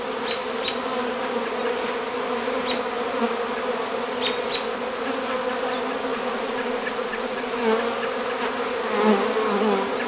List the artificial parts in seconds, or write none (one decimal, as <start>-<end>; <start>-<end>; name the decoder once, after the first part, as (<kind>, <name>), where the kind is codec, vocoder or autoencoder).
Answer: 6.1-7.6 (vocoder, Vocos)